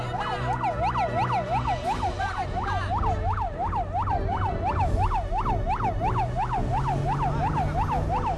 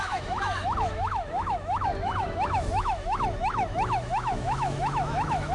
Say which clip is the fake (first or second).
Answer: second